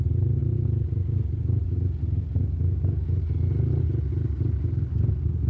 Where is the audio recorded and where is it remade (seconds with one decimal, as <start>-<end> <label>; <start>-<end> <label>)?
0.0-5.5 recorded

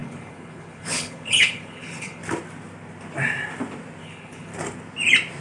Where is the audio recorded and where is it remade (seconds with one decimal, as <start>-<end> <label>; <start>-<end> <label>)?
0.0-2.2 remade; 2.2-4.0 recorded; 4.0-4.5 remade; 4.5-5.4 recorded

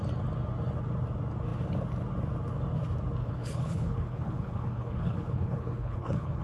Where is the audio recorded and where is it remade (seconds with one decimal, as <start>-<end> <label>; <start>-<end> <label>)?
0.0-3.2 recorded; 3.2-6.4 remade

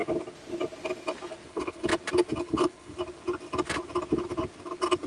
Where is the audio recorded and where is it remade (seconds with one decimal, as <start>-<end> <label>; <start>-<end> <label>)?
0.0-1.5 recorded; 1.5-1.9 remade; 1.9-2.4 recorded; 2.4-3.0 remade; 3.0-5.1 recorded